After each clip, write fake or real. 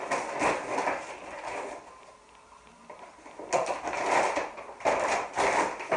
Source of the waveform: real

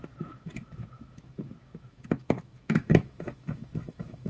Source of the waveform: fake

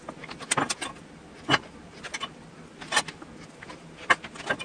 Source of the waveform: real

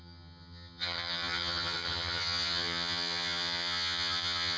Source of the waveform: fake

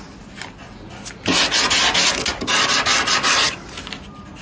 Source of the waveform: real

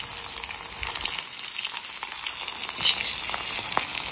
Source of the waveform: real